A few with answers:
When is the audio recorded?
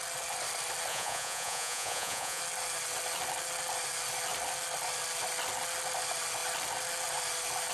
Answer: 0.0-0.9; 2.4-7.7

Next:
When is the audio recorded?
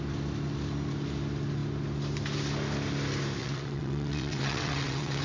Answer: 0.0-3.4